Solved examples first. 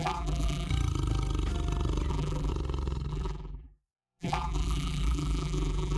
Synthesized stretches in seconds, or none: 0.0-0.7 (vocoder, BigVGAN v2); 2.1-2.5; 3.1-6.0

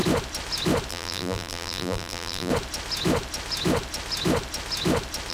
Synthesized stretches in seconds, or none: 0.9-2.5 (vocoder, BigVGAN v2)

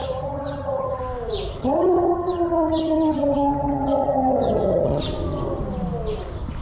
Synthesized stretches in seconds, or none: 0.0-1.0 (vocoder, HiFi-GAN); 1.6-5.0

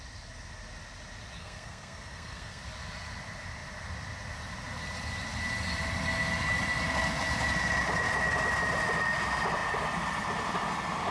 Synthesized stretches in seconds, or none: 1.4-2.6 (codec, SNAC)

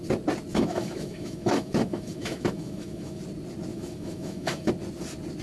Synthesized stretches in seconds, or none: 0.5-3.2 (autoencoder, DAC-VAE); 3.7-4.7

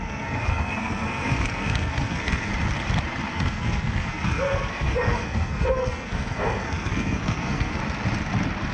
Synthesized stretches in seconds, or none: 0.0-2.5 (codec, SNAC); 3.3-7.8

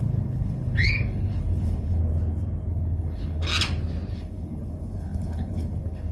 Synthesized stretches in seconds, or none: 0.0-2.0 (codec, HILCodec); 2.7-3.5; 4.1-6.1